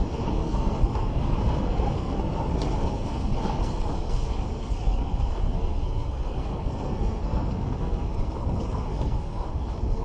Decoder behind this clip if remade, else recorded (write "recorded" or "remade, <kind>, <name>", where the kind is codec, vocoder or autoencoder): remade, codec, SNAC